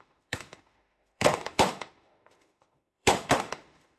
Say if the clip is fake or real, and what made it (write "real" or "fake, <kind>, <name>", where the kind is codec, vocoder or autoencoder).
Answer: fake, autoencoder, DAC-VAE